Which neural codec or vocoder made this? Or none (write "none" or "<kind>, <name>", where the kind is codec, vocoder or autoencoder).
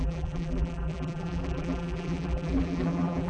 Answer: vocoder, BigVGAN v2